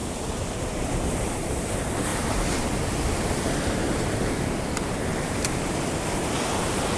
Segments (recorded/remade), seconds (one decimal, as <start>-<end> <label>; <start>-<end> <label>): 0.0-0.8 remade; 0.8-2.1 recorded; 2.1-4.5 remade; 4.5-5.1 recorded; 5.1-6.0 remade; 6.0-7.0 recorded